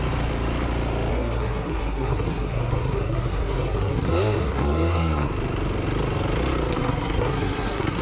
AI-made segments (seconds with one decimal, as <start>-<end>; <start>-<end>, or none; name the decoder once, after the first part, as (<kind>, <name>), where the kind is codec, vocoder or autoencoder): 1.1-5.3 (codec, SNAC); 6.7-8.0